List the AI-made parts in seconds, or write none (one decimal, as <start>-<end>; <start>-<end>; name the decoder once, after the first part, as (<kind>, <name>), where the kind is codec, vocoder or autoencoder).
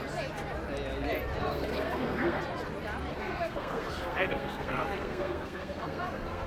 1.4-2.4 (codec, SNAC); 3.1-6.5